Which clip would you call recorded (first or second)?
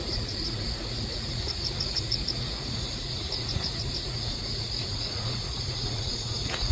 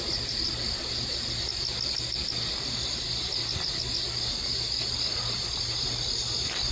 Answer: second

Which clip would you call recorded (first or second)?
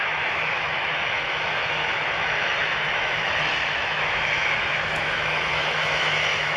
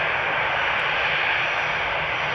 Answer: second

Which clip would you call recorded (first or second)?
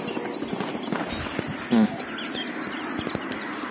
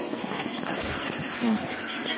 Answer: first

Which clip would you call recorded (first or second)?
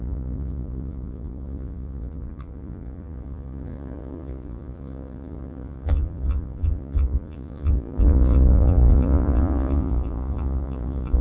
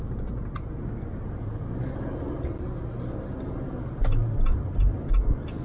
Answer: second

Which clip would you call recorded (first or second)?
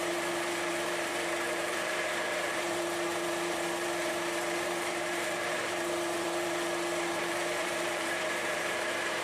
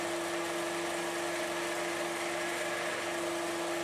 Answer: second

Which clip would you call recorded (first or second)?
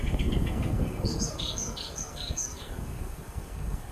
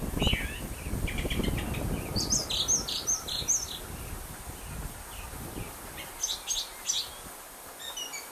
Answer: second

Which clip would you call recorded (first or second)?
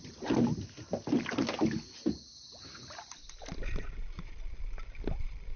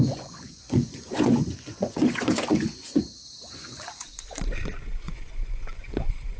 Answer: first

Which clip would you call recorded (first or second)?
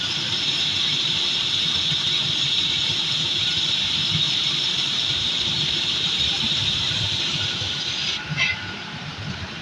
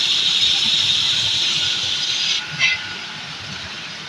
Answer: second